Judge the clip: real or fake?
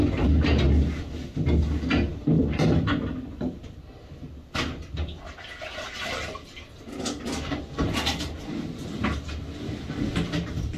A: real